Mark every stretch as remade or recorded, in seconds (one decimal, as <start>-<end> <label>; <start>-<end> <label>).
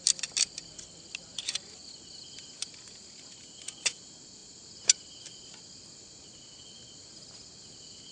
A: 0.0-8.1 recorded